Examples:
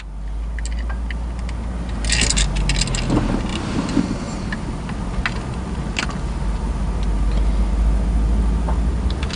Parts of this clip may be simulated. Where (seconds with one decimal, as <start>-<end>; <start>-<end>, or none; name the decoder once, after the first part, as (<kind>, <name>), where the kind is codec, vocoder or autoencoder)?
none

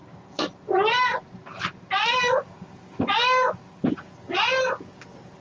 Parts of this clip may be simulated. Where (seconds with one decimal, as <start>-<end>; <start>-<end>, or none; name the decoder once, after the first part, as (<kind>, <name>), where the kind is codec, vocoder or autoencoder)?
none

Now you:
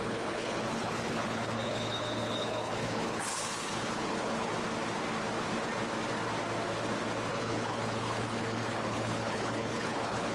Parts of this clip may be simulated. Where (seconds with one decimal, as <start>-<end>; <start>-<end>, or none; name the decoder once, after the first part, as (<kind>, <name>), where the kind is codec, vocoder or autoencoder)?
0.0-4.5 (codec, HILCodec); 7.3-10.3

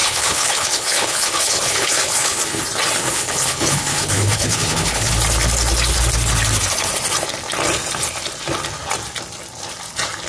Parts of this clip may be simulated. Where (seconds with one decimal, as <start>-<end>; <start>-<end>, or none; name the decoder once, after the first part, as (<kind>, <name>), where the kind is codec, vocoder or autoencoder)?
0.0-2.6 (codec, HILCodec); 3.0-5.1

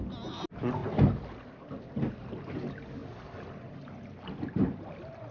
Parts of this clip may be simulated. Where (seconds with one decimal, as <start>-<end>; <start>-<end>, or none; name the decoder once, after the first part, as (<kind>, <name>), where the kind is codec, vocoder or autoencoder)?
none

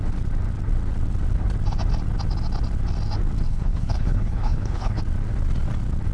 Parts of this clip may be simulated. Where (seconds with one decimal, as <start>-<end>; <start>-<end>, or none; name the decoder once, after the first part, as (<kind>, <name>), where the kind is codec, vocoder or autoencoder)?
3.5-5.0 (codec, HILCodec)